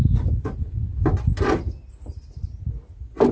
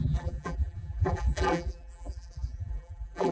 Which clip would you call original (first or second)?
first